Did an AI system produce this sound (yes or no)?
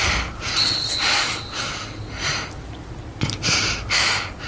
no